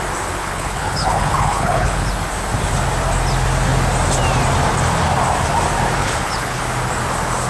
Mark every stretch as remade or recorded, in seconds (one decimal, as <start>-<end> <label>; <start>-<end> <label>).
0.0-0.4 recorded; 0.4-2.1 remade; 2.1-6.0 recorded; 6.0-6.6 remade; 6.6-7.5 recorded